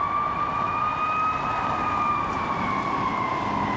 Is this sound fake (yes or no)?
no